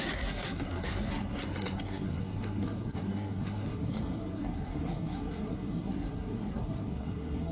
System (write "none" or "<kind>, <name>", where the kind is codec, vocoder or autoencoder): codec, SNAC